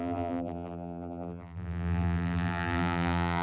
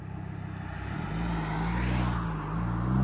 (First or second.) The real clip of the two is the second